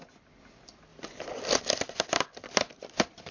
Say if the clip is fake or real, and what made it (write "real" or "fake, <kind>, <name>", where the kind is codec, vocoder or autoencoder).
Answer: real